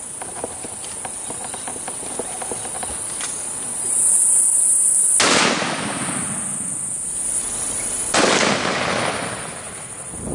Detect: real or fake real